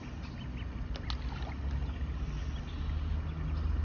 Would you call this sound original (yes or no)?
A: yes